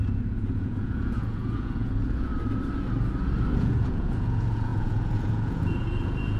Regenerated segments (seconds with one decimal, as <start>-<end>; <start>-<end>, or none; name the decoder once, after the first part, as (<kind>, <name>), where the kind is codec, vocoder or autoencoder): 0.0-2.3 (vocoder, Vocos); 3.6-6.4